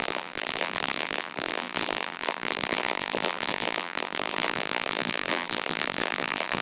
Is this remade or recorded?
remade